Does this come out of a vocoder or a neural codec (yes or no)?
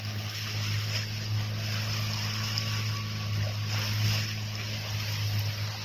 no